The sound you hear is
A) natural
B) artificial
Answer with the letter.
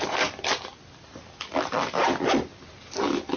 A